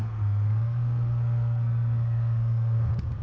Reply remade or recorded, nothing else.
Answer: remade